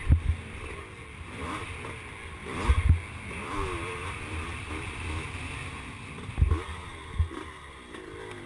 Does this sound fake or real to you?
real